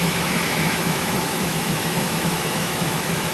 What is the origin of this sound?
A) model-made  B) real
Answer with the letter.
A